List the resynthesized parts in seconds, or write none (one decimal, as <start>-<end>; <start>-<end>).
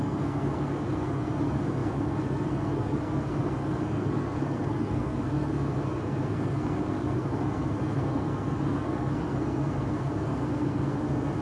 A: 0.0-11.4